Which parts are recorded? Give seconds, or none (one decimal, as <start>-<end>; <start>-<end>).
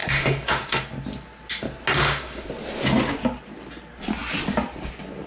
0.8-1.9; 2.5-5.3